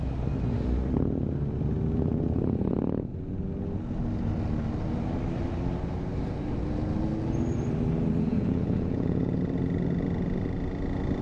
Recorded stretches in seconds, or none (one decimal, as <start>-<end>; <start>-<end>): 0.0-8.3; 9.4-11.2

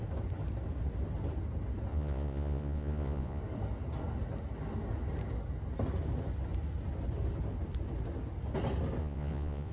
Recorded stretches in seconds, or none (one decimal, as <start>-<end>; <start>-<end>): 0.0-1.9; 3.4-9.0